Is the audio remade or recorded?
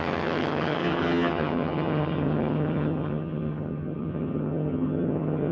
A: remade